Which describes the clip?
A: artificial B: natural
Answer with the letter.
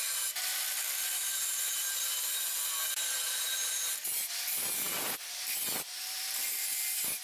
A